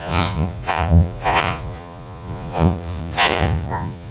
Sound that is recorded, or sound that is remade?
remade